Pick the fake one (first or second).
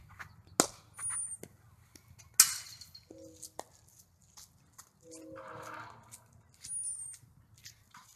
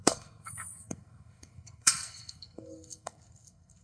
second